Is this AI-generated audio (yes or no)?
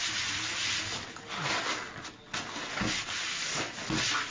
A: no